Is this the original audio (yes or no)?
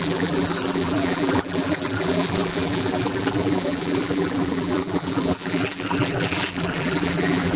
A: no